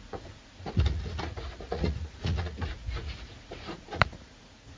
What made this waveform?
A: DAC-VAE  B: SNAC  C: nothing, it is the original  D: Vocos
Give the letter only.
D